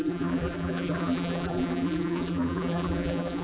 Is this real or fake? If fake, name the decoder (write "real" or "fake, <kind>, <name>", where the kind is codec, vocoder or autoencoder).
fake, vocoder, BigVGAN v2